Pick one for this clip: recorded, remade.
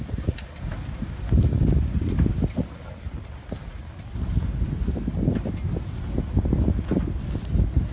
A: recorded